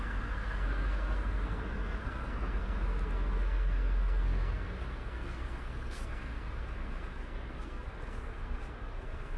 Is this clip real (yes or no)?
no